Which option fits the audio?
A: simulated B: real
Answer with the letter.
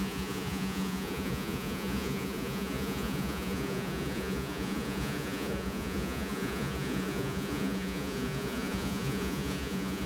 A